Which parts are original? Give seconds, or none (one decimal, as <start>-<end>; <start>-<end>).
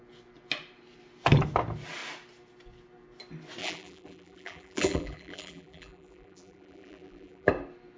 0.0-3.6; 7.5-8.0